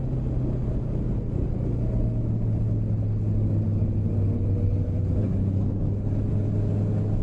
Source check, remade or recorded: recorded